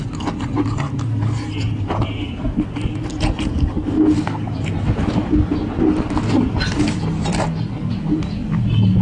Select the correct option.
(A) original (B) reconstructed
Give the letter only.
A